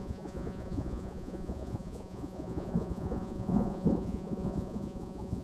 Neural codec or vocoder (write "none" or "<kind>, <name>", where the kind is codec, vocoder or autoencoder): vocoder, Vocos